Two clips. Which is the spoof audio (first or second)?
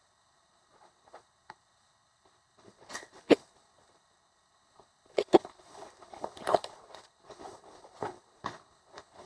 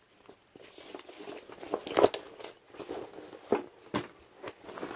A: first